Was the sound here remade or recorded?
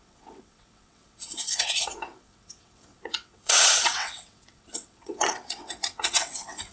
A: remade